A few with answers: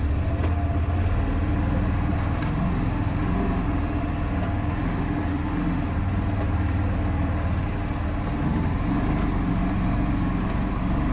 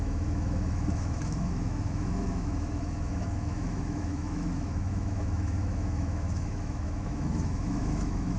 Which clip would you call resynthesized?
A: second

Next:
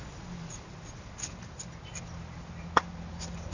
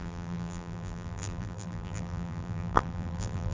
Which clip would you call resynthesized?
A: second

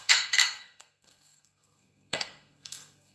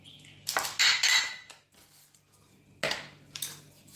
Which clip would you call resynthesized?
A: first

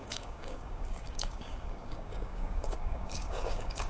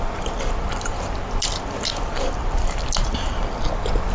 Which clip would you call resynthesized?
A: first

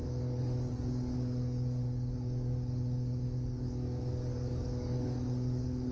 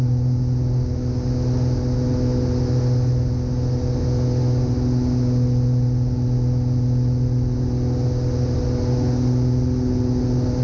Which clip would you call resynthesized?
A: first